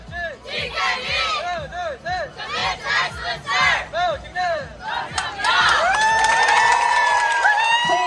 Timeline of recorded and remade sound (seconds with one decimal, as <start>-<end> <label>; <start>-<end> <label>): 0.0-2.6 recorded; 2.6-7.5 remade; 7.5-8.1 recorded